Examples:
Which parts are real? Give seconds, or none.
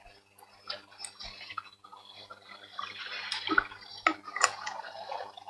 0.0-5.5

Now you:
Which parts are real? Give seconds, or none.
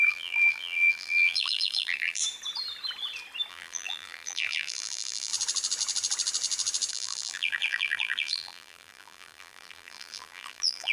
2.2-3.5; 5.3-6.9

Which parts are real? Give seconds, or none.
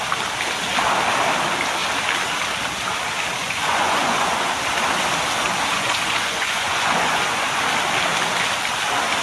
0.0-3.4; 4.5-5.7; 7.6-9.2